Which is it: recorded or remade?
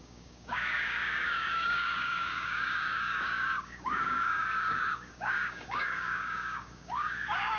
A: remade